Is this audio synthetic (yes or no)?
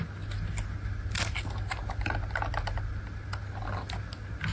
no